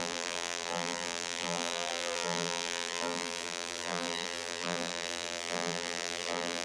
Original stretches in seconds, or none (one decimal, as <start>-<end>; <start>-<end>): none